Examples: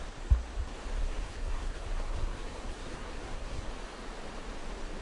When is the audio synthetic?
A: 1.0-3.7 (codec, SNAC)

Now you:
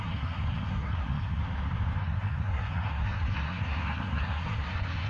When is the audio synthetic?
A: 0.0-1.4 (codec, SNAC); 2.0-5.1